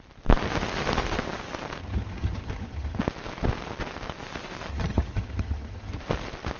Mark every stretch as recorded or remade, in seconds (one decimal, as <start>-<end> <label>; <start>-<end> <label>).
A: 0.0-1.8 recorded; 1.8-3.0 remade; 3.0-4.7 recorded; 4.7-6.0 remade; 6.0-6.6 recorded